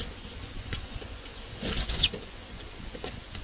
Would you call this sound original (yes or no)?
no